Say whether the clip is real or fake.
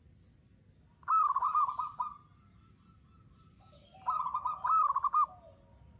real